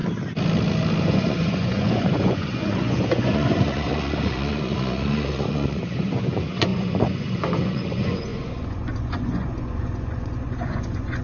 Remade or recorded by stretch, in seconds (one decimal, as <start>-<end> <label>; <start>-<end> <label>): 0.0-1.0 recorded; 1.0-11.2 remade